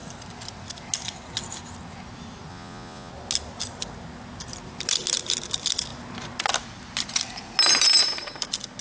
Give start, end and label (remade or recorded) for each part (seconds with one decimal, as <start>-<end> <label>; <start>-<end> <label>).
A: 0.0-2.5 recorded; 2.5-3.1 remade; 3.1-8.8 recorded